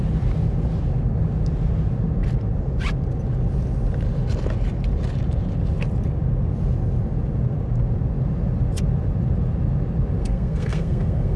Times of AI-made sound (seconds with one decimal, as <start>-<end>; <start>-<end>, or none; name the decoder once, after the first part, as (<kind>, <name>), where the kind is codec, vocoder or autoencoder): 10.2-11.4 (codec, SNAC)